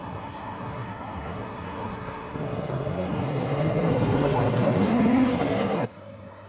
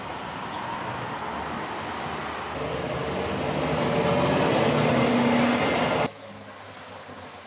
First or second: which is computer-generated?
first